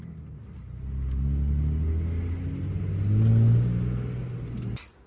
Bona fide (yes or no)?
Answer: yes